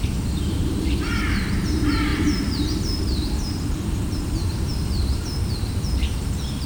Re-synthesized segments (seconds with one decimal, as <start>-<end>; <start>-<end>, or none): 0.0-4.7; 5.6-6.7